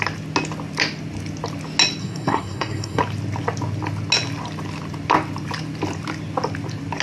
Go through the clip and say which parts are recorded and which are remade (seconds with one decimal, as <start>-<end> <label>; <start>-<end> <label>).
0.0-2.0 recorded; 2.0-3.0 remade; 3.0-7.0 recorded